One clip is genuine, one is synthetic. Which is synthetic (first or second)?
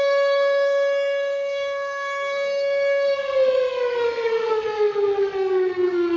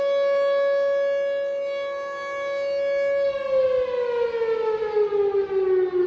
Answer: first